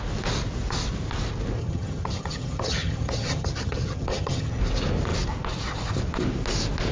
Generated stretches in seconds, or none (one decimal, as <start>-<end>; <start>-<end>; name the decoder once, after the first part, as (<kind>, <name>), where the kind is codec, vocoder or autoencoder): 1.6-4.6 (vocoder, HiFi-GAN)